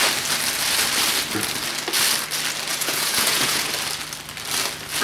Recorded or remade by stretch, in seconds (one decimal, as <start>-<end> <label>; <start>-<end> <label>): 0.0-2.7 recorded; 2.7-3.7 remade; 3.7-5.0 recorded